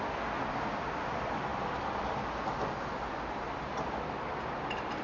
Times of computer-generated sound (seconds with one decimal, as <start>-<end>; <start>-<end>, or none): none